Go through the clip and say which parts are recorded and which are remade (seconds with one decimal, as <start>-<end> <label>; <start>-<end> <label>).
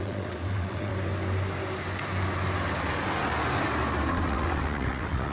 0.0-0.9 remade; 0.9-4.1 recorded; 4.1-5.3 remade